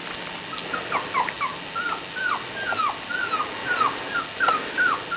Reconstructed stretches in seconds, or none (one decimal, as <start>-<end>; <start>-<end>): none